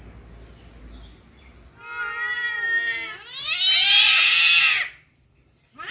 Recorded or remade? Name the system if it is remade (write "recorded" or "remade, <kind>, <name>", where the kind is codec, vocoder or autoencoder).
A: recorded